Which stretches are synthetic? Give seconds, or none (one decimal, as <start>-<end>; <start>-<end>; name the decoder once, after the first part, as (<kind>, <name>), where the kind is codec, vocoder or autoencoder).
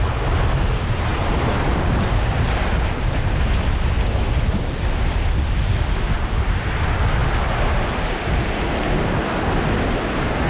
none